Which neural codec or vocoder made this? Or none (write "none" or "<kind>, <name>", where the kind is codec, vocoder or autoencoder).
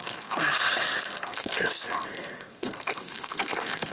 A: codec, SNAC